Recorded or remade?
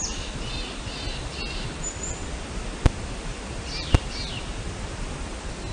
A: recorded